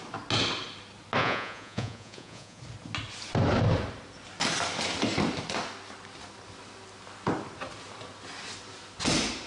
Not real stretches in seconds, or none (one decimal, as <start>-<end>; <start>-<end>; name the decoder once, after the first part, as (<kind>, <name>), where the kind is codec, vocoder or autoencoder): 1.2-2.6 (vocoder, Vocos)